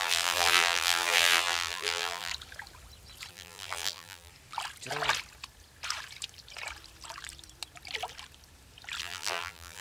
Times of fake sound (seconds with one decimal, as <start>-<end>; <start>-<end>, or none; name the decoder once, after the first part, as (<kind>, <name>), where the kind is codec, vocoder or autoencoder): 0.0-2.3 (vocoder, BigVGAN v2); 3.3-4.3; 9.0-9.8